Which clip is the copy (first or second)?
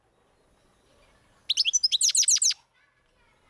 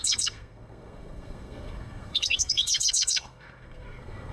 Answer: second